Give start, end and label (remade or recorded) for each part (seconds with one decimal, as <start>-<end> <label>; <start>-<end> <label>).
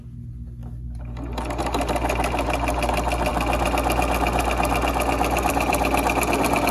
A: 0.0-6.7 recorded